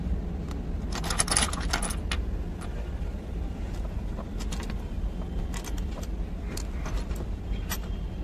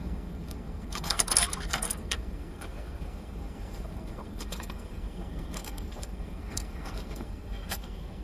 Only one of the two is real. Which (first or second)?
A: first